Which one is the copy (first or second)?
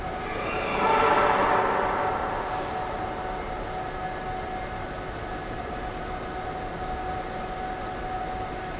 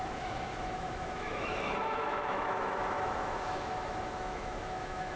second